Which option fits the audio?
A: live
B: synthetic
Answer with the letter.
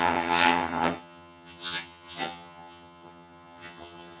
B